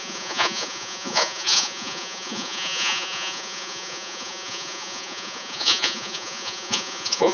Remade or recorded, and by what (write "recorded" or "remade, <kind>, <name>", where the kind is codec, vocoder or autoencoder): remade, vocoder, Vocos